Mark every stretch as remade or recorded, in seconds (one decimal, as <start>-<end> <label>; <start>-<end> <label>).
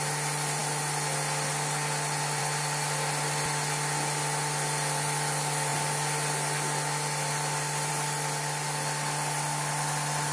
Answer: 0.0-10.3 recorded